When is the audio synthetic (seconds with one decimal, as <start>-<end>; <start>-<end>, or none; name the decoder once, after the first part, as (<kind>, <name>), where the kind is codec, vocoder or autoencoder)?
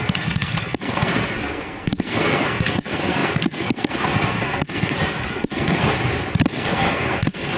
0.0-5.9 (codec, SNAC); 6.5-7.6